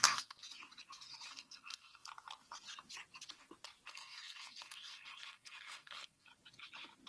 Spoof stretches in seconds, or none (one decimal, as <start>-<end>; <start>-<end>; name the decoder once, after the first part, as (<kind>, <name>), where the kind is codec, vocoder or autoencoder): 0.0-0.4 (codec, SNAC); 1.3-2.0; 3.9-6.3